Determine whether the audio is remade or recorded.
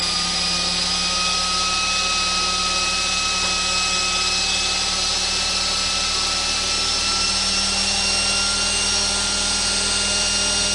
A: recorded